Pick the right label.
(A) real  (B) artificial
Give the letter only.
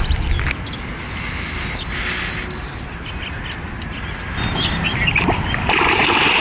A